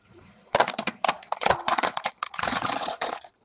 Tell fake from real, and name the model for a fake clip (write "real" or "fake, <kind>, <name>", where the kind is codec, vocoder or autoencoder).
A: fake, vocoder, Vocos